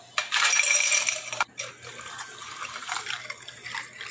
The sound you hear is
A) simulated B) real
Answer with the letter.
B